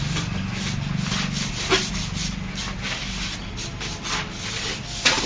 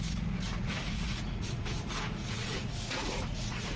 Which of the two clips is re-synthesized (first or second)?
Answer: second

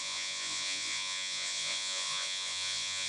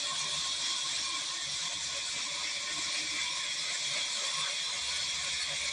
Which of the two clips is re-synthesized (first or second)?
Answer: first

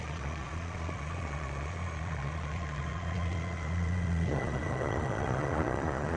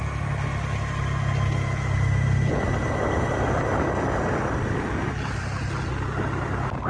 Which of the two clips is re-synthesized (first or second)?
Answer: first